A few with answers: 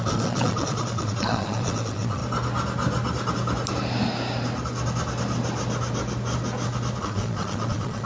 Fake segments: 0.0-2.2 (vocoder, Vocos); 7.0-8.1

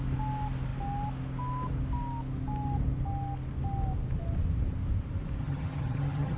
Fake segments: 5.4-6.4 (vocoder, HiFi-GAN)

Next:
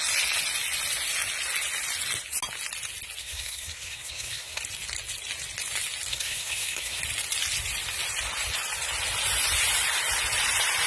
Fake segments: 3.2-4.6 (codec, SNAC); 6.1-7.0